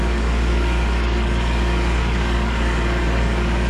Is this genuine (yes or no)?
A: no